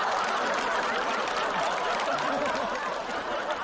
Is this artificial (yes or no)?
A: yes